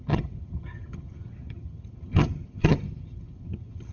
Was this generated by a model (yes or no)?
yes